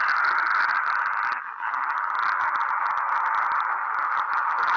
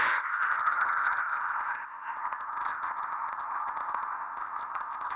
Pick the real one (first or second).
first